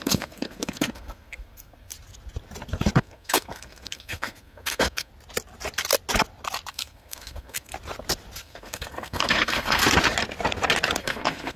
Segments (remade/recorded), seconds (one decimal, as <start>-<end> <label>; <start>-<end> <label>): 0.0-1.9 remade; 1.9-3.0 recorded; 3.0-5.1 remade; 5.1-6.7 recorded; 6.7-7.7 remade; 7.7-8.4 recorded; 8.4-9.8 remade; 9.8-11.0 recorded; 11.0-11.6 remade